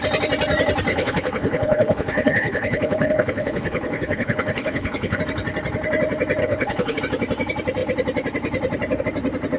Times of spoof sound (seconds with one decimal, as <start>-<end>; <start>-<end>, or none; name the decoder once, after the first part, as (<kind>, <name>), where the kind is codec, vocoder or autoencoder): 0.9-5.2 (codec, HILCodec); 6.4-7.0